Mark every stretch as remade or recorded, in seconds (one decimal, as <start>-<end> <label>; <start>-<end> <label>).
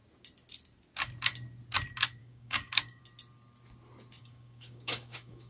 0.0-2.2 recorded; 2.2-3.0 remade; 3.0-4.2 recorded; 4.2-5.5 remade